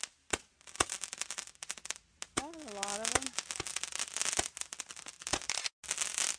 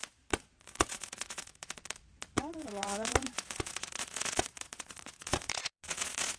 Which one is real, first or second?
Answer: first